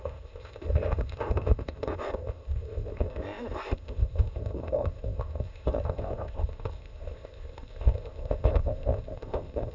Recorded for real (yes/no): no